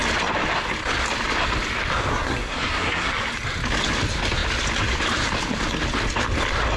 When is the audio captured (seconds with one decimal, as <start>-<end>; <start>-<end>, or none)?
0.0-2.1; 3.1-6.8